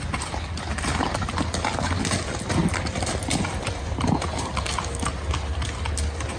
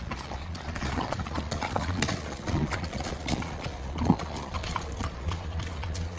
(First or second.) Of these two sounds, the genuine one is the first